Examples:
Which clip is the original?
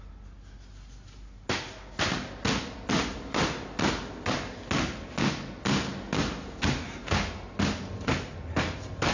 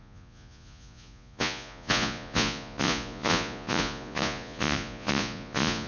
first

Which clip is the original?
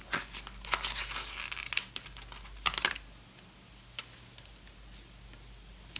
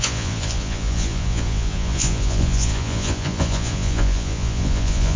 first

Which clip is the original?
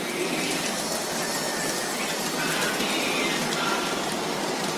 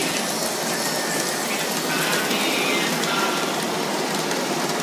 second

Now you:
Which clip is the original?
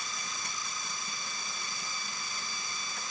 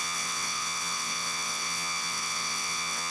first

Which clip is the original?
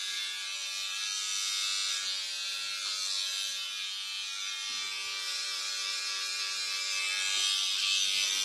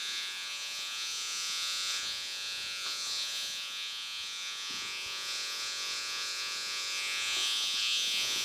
first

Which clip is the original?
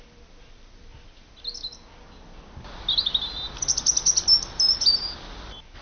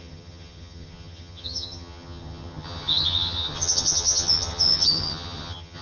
first